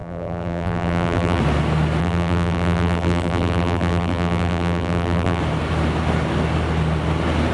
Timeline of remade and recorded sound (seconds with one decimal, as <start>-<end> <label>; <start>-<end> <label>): 0.0-1.4 remade; 1.4-2.0 recorded; 2.0-5.4 remade; 5.4-7.5 recorded

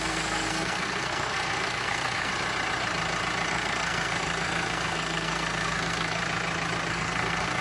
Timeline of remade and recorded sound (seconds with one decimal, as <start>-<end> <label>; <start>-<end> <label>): 0.0-2.3 remade; 2.3-3.5 recorded; 3.5-6.2 remade; 6.2-6.9 recorded; 6.9-7.6 remade

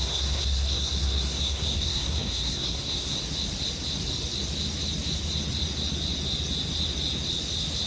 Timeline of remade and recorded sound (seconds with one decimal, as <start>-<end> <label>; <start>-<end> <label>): 0.0-3.2 remade; 3.2-7.9 recorded

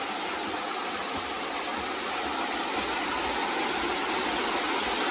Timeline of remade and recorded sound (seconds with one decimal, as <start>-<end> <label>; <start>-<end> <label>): 0.0-5.1 recorded

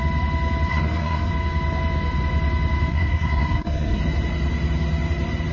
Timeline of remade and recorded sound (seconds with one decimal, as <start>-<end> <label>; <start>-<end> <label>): 0.0-0.7 recorded; 0.7-1.3 remade; 1.3-2.9 recorded; 2.9-4.0 remade; 4.0-5.5 recorded